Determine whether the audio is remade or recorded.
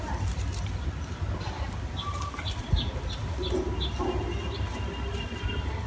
recorded